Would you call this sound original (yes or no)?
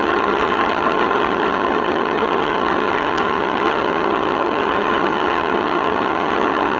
no